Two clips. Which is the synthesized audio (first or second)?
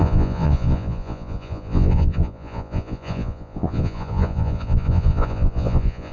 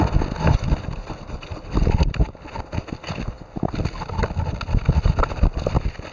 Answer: first